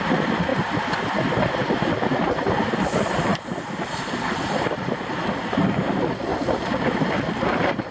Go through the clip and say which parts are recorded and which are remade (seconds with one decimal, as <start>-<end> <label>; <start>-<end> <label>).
0.0-6.3 recorded; 6.3-7.1 remade; 7.1-7.9 recorded